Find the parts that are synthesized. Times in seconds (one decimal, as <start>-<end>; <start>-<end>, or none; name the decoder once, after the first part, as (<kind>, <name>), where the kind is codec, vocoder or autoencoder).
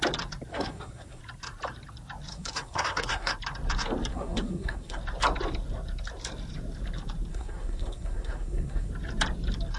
0.5-1.2 (codec, SNAC); 2.3-3.3; 4.1-5.0; 7.3-8.9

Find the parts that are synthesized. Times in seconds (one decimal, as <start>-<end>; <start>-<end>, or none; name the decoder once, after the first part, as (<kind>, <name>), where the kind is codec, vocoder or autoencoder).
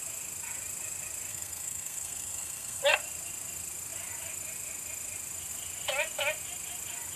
1.3-2.8 (codec, SNAC)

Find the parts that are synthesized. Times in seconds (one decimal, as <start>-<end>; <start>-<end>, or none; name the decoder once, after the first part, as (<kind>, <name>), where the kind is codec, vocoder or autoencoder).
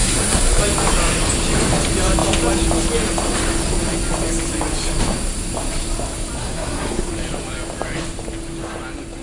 0.0-0.6 (codec, SNAC); 6.4-7.1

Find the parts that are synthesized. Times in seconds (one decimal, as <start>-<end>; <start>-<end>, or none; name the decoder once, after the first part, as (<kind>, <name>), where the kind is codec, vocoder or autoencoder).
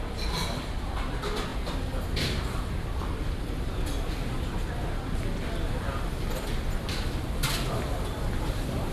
none